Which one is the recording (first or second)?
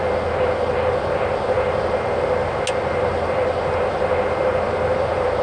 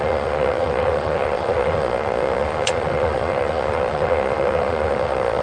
first